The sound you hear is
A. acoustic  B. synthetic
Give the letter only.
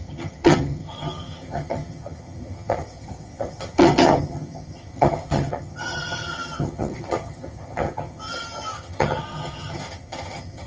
B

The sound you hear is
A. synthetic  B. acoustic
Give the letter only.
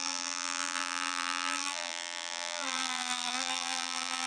A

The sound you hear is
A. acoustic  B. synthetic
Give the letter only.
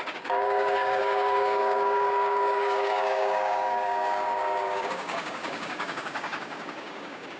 B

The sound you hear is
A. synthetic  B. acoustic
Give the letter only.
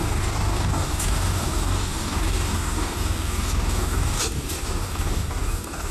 A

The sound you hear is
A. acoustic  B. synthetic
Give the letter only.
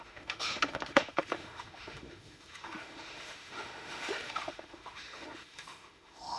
B